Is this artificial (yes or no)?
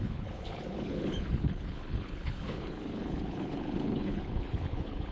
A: yes